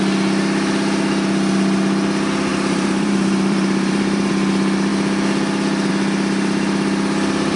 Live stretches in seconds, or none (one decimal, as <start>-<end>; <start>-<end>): 0.0-2.5; 4.3-7.6